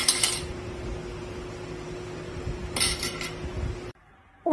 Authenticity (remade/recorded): recorded